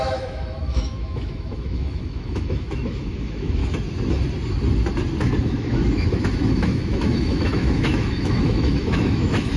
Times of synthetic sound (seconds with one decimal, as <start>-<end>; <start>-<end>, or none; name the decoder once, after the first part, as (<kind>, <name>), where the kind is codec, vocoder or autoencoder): 0.0-3.6 (autoencoder, DAC-VAE); 5.2-9.6